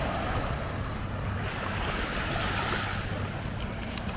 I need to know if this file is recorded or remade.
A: recorded